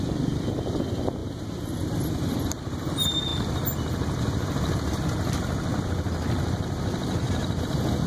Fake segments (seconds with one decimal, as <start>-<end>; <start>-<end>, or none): none